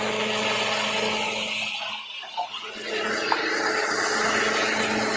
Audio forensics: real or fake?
real